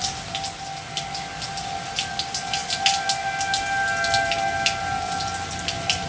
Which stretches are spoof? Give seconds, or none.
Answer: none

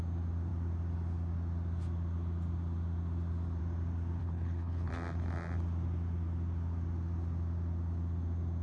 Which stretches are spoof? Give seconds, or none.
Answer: 4.2-4.9 (codec, HILCodec)